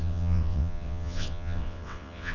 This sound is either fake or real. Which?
fake